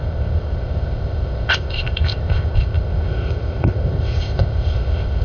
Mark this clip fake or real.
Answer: fake